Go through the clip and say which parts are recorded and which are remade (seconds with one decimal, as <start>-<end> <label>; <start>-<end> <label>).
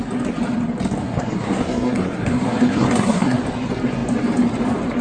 0.0-1.0 recorded; 1.0-3.4 remade; 3.4-5.0 recorded